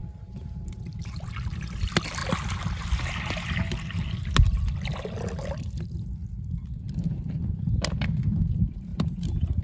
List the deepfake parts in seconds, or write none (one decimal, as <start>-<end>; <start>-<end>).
0.0-1.3; 8.9-9.6